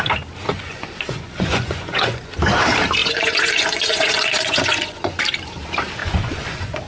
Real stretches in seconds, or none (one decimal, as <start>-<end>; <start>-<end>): 0.0-0.5; 2.4-3.0; 5.2-6.0